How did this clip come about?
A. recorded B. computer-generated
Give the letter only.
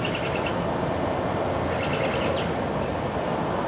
A